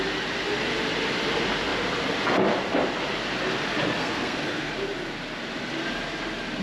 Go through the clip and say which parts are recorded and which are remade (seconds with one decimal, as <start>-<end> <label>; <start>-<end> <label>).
0.0-4.0 recorded; 4.0-4.7 remade; 4.7-6.6 recorded